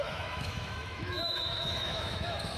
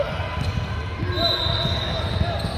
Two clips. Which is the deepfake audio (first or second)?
first